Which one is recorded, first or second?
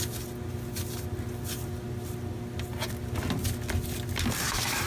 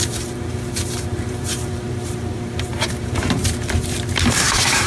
first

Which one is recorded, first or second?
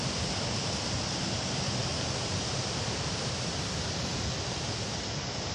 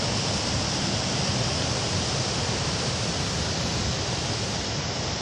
second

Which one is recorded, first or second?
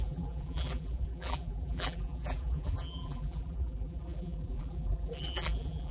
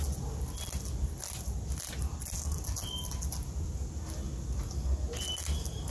second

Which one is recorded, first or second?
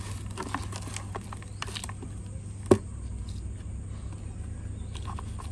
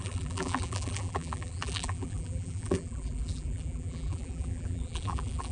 first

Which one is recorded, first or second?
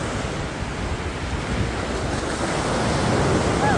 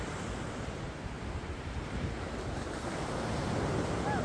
first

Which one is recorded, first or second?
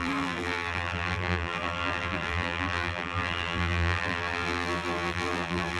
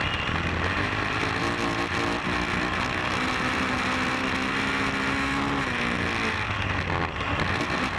second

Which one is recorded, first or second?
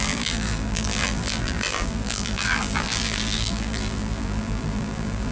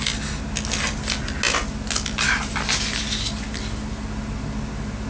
second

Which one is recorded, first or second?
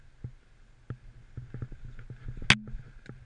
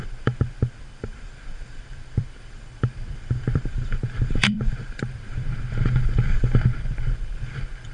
first